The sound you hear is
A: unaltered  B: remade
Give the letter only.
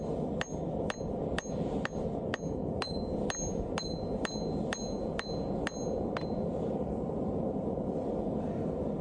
A